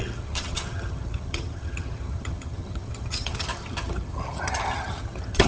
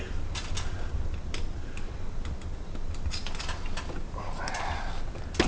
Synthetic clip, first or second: first